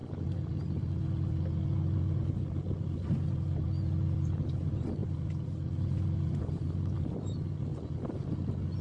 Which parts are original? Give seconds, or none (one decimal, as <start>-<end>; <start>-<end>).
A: 0.0-8.8